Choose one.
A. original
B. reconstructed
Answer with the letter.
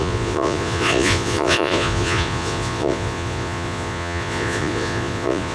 B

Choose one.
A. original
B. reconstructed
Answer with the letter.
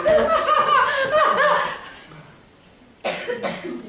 A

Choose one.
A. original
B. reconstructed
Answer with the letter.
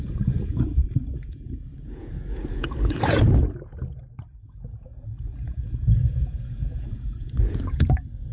B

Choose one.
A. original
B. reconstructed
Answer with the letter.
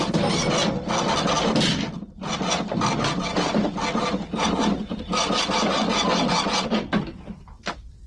A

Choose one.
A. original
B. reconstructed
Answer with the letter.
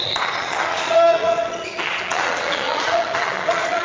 B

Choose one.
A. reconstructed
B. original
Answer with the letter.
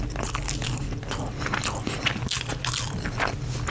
B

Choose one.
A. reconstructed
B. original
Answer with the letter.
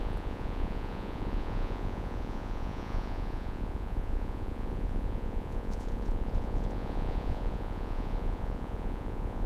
A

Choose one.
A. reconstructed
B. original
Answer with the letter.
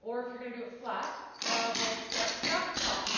B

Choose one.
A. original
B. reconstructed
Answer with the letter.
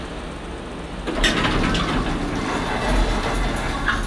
A